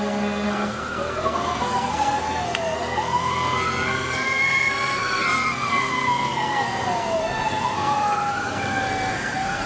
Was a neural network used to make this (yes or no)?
yes